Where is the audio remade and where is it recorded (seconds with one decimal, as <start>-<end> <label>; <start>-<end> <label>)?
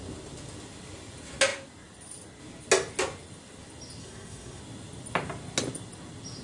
0.0-4.0 recorded; 4.0-4.6 remade; 4.6-6.4 recorded